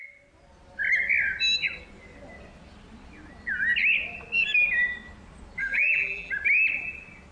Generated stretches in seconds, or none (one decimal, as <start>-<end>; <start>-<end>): 5.6-6.3